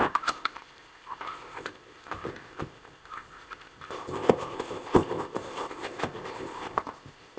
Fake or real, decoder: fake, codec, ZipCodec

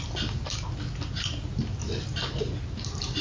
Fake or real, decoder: real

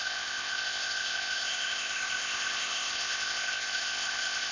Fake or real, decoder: fake, codec, ZipCodec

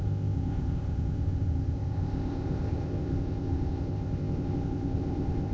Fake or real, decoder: fake, codec, ZipCodec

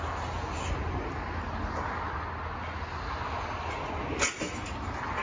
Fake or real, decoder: real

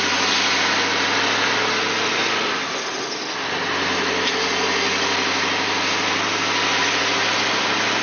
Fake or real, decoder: real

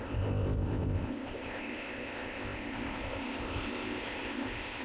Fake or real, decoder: fake, codec, ZipCodec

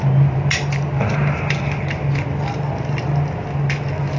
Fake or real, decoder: real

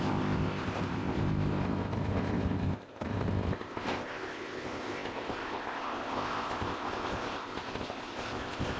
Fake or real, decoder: fake, codec, ZipCodec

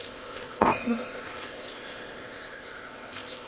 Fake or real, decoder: fake, codec, ZipCodec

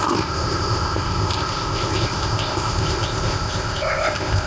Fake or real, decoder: fake, codec, ZipCodec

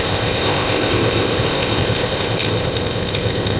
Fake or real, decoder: fake, codec, ZipCodec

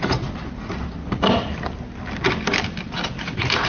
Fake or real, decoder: real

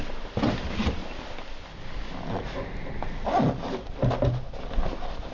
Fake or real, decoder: real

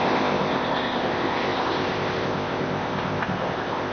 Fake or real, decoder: fake, codec, ZipCodec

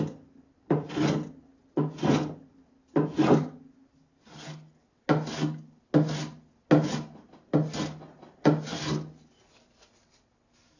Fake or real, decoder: real